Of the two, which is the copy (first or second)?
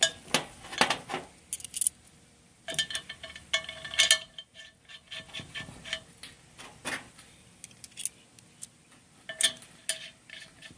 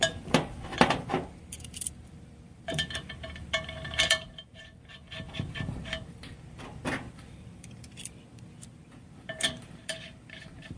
second